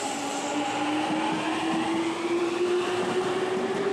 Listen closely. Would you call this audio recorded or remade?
recorded